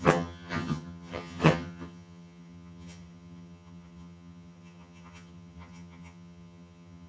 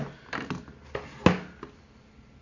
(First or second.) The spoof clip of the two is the first